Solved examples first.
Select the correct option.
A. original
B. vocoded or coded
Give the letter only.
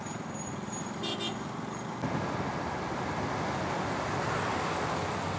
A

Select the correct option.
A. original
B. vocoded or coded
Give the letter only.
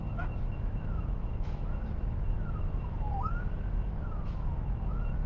B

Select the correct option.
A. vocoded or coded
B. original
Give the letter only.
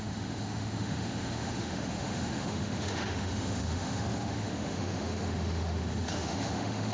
A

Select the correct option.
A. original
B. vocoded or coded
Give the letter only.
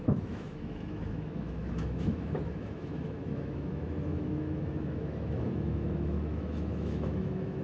B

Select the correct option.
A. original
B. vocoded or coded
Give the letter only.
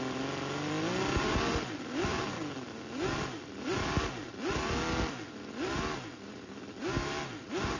A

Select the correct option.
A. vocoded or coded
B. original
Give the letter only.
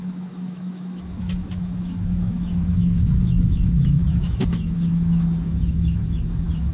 A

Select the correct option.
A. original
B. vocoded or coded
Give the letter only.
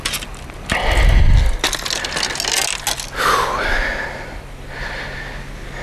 A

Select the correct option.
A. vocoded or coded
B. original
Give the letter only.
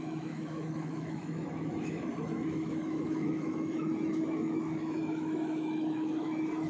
A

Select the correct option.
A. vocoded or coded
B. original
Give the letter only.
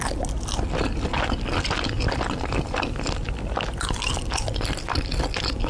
B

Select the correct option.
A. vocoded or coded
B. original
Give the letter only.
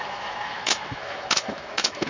A